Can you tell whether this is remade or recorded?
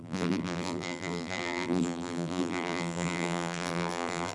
remade